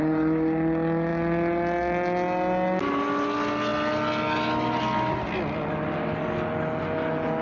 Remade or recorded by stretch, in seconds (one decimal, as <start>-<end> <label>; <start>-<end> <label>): 0.0-7.4 recorded

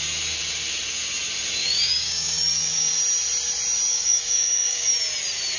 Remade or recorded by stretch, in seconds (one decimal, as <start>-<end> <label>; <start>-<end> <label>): 0.0-1.6 recorded; 1.6-3.0 remade; 3.0-3.9 recorded; 3.9-4.9 remade; 4.9-5.6 recorded

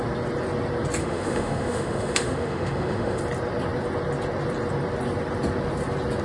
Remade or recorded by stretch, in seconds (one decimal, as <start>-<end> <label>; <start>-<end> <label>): 0.0-1.0 recorded; 1.0-3.2 remade; 3.2-6.2 recorded

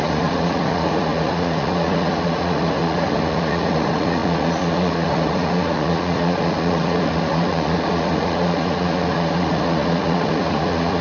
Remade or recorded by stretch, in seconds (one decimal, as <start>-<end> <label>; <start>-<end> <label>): 0.0-11.0 remade

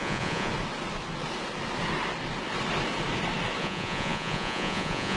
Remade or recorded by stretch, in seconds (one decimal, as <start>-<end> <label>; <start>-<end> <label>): 0.0-0.5 remade; 0.5-3.6 recorded; 3.6-5.2 remade